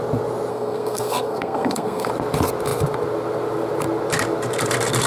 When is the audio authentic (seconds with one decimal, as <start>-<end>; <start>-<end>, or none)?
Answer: 0.0-0.5; 2.1-5.1